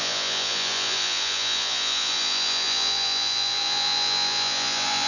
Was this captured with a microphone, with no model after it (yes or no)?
no